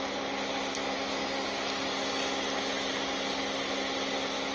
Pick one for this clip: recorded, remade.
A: recorded